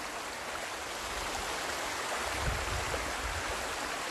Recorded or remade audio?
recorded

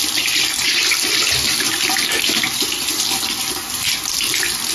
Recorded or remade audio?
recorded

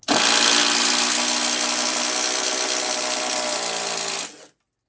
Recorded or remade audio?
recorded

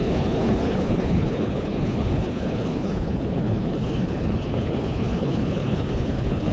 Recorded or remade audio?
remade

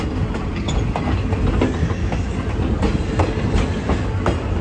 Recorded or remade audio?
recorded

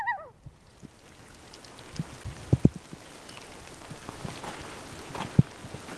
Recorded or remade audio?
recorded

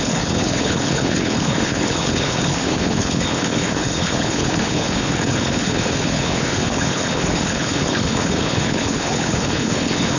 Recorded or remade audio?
remade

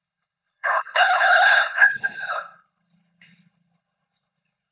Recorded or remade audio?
remade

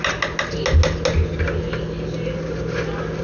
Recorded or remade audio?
recorded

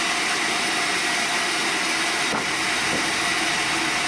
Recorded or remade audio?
recorded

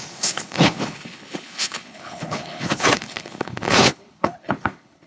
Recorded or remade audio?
remade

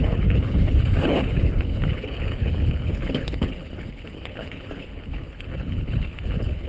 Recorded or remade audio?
remade